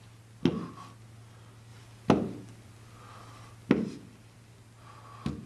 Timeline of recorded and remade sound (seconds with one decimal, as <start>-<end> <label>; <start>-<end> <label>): 0.0-5.5 recorded